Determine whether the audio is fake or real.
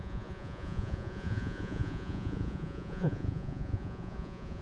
fake